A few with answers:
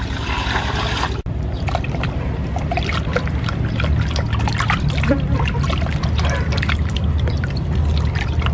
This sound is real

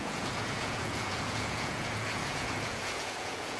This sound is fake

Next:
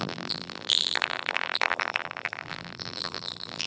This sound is fake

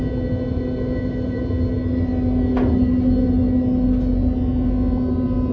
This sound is real